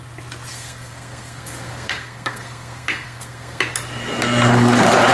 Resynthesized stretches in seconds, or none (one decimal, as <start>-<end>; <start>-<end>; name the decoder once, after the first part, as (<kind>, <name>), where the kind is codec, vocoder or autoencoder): 0.5-3.6 (codec, SNAC)

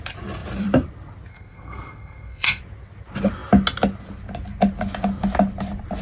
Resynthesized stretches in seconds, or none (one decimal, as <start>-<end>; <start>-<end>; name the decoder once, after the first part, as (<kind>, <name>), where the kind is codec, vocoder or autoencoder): 1.3-2.6 (codec, SNAC)

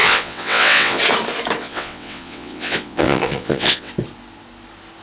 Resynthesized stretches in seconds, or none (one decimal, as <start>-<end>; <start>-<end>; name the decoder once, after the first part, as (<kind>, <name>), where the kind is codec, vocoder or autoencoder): 0.0-1.0 (vocoder, WaveNeXt); 1.6-3.9